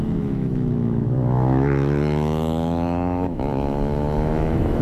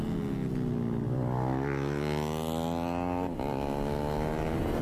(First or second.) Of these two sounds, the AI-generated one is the first